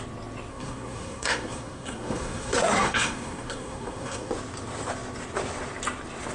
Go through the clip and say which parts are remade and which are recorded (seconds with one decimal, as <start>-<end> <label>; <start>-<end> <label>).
0.0-0.5 recorded; 0.5-4.3 remade; 4.3-6.3 recorded